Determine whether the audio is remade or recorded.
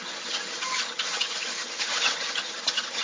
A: remade